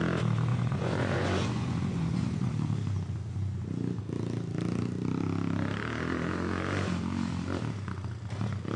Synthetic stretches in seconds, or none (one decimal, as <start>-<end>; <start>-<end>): 0.5-2.5